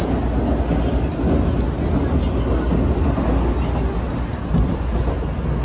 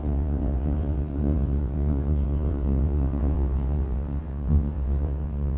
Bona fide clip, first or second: first